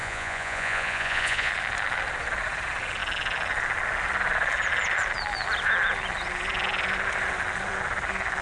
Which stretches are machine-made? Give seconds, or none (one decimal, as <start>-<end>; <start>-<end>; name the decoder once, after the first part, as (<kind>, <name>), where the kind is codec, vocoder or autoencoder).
0.0-1.5 (vocoder, Vocos)